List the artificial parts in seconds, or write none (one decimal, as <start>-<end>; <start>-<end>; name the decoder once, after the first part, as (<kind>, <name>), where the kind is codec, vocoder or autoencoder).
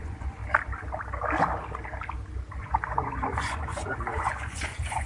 0.0-0.4 (vocoder, Vocos); 2.6-5.1